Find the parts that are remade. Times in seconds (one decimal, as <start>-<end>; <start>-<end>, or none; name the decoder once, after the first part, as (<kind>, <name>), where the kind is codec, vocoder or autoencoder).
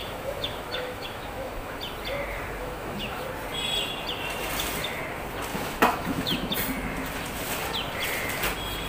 0.0-1.8 (autoencoder, DAC-VAE); 2.6-3.2; 5.5-6.5